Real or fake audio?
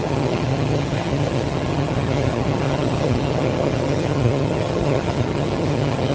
fake